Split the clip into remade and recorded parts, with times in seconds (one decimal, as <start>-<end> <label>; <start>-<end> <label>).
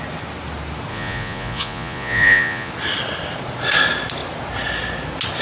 0.0-0.9 recorded; 0.9-2.7 remade; 2.7-5.4 recorded